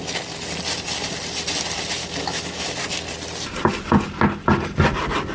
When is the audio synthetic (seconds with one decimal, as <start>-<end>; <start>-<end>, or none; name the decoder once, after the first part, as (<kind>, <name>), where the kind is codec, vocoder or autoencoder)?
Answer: 2.0-2.7 (autoencoder, DAC-VAE)